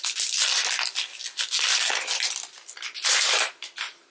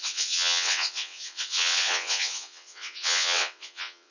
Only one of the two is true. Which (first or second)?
first